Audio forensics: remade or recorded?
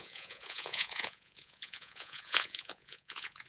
remade